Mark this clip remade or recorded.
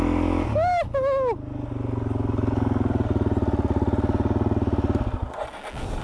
recorded